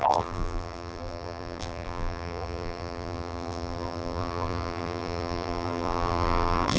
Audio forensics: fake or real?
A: fake